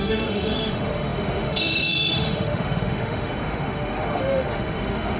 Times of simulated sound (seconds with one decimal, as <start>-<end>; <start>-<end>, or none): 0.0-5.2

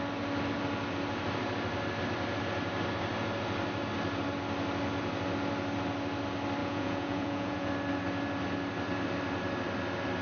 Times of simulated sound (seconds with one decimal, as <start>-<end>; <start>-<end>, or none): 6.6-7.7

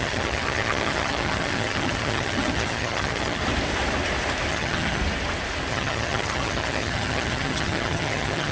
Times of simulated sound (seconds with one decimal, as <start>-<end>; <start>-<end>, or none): 0.0-3.4; 4.5-5.0; 5.7-8.5

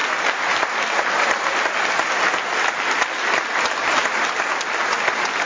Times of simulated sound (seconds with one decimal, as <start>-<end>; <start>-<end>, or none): none

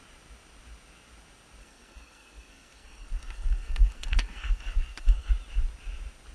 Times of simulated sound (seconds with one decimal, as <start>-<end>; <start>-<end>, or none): 1.6-5.3

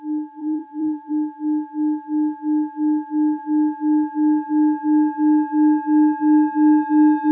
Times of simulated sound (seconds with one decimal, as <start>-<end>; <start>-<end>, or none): 0.4-1.1

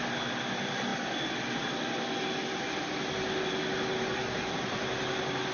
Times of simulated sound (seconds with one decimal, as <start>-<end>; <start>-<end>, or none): none

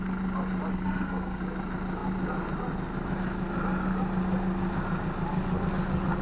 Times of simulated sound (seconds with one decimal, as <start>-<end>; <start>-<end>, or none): 0.7-1.4